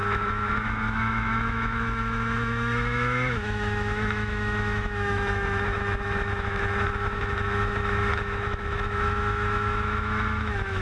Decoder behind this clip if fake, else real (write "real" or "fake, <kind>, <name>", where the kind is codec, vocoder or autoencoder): fake, autoencoder, DAC-VAE